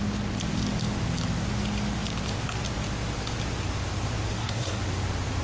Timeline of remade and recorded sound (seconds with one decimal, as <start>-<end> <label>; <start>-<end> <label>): 0.0-4.3 recorded; 4.3-4.8 remade; 4.8-5.4 recorded